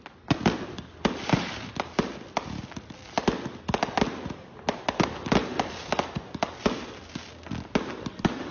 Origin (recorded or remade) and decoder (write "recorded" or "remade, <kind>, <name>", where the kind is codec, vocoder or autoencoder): recorded